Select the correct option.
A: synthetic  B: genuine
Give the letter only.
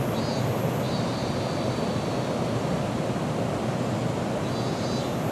B